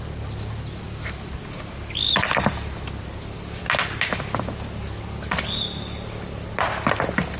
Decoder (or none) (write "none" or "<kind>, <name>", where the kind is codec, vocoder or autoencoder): none